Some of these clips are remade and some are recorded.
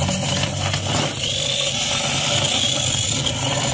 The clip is recorded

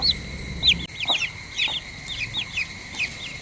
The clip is recorded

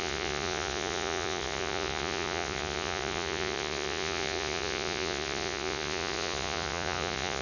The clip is remade